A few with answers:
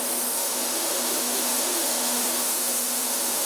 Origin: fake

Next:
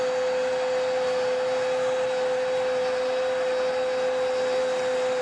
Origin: real